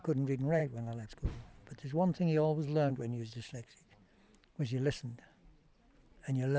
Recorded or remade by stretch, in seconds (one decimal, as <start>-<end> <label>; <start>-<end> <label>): 0.0-0.6 recorded; 0.6-1.1 remade; 1.1-2.9 recorded; 2.9-3.8 remade; 3.8-6.6 recorded